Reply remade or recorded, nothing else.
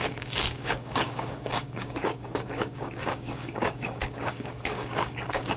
remade